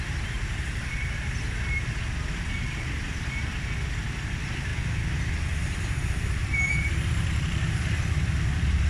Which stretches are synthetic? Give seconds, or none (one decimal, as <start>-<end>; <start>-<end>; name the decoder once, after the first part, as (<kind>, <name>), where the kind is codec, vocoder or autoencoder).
0.0-3.5 (vocoder, BigVGAN v2); 4.2-4.7; 5.3-8.9